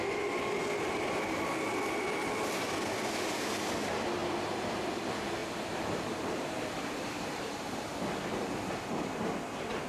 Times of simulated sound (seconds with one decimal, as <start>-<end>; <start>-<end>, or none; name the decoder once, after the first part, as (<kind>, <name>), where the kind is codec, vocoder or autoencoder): 4.2-4.9 (vocoder, BigVGAN v2); 5.4-7.9